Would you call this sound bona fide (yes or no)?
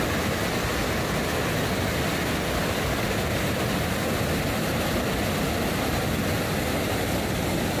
yes